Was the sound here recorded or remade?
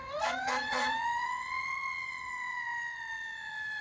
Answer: remade